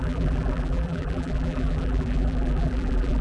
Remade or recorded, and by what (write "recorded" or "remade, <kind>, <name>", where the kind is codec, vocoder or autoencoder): remade, vocoder, BigVGAN v2